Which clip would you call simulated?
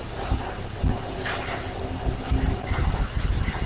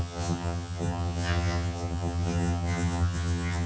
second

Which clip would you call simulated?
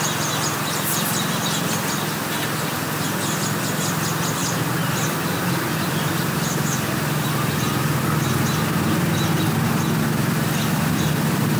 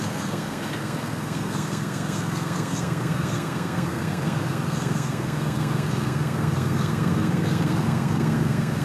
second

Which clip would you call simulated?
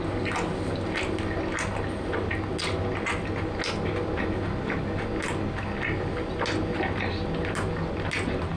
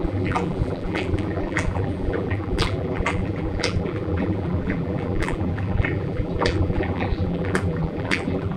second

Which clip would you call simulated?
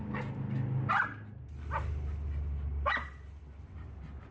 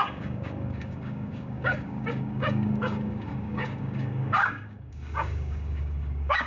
second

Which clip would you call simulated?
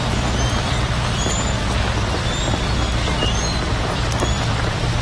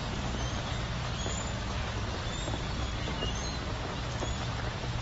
second